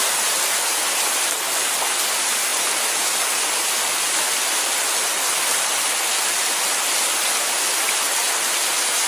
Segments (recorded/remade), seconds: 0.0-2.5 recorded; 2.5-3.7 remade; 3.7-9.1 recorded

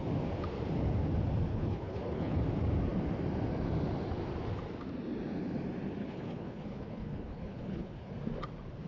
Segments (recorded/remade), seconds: 0.0-1.5 recorded; 1.5-2.4 remade; 2.4-6.0 recorded; 6.0-8.1 remade; 8.1-8.9 recorded

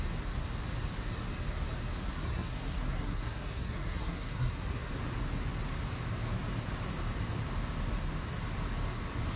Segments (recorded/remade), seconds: 0.0-2.0 recorded; 2.0-4.9 remade; 4.9-9.4 recorded

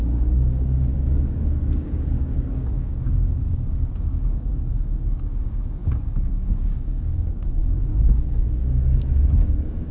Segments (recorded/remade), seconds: 0.0-9.9 remade

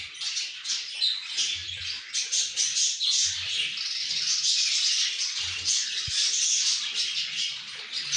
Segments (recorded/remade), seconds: 0.0-8.2 recorded

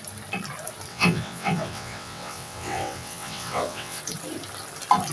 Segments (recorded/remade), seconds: 0.0-0.9 recorded; 0.9-4.0 remade; 4.0-5.1 recorded